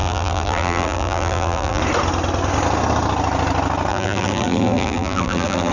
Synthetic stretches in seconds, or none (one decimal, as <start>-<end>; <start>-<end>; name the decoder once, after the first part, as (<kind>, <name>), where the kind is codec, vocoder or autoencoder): 0.0-1.8 (vocoder, BigVGAN v2); 3.9-5.7